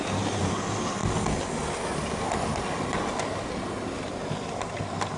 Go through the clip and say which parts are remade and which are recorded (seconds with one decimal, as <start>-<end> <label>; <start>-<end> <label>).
0.0-5.2 recorded